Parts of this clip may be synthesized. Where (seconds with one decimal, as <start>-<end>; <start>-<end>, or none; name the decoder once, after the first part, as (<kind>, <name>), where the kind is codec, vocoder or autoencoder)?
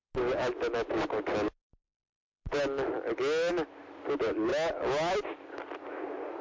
none